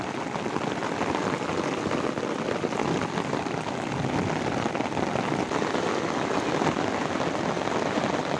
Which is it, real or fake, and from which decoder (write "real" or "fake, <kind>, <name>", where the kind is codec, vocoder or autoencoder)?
real